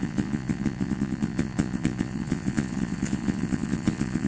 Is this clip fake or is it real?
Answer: fake